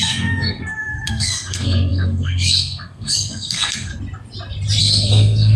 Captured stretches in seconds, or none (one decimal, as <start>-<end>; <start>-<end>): 3.9-4.8